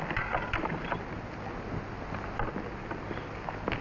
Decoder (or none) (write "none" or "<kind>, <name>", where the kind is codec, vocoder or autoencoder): none